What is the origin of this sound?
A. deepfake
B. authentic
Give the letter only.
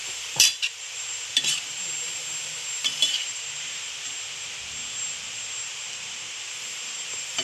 A